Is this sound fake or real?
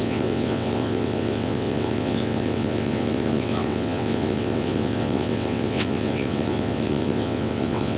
fake